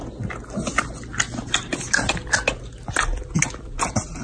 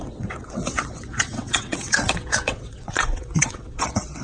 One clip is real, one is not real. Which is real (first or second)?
first